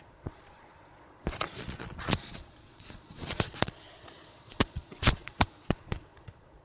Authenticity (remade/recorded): remade